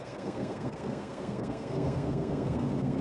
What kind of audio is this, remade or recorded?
remade